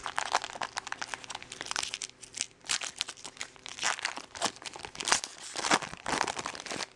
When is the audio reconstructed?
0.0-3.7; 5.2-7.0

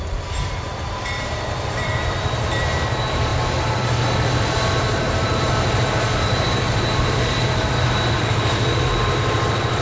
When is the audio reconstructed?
0.0-9.8

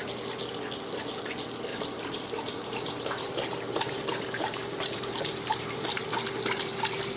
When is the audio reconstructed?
1.7-6.0

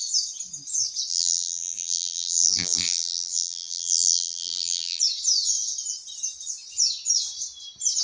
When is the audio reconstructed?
1.1-5.0

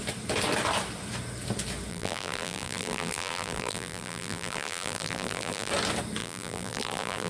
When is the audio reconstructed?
1.9-5.7; 6.2-7.3

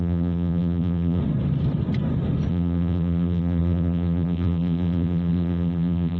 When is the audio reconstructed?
0.0-1.2; 2.5-6.2

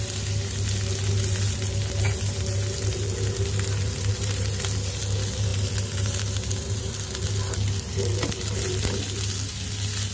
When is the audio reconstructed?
5.5-7.3

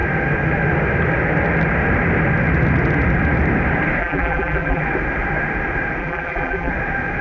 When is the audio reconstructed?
4.0-4.8; 6.0-6.7